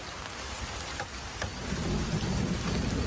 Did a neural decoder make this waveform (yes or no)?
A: no